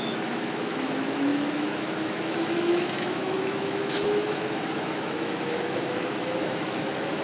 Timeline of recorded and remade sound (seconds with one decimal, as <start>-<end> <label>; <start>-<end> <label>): 0.0-7.2 remade